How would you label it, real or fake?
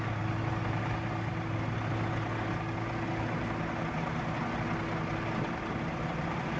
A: real